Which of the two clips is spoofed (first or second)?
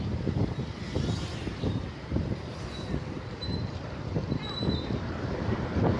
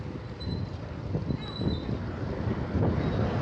first